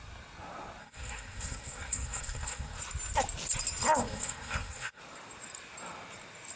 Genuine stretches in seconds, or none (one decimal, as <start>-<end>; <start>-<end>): 0.0-0.8; 2.8-4.0; 5.0-6.6